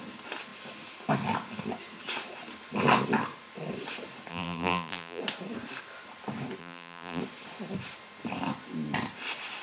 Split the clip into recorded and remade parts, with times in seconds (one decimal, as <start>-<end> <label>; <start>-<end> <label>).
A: 0.0-4.3 recorded; 4.3-5.2 remade; 5.2-6.6 recorded; 6.6-7.2 remade; 7.2-9.6 recorded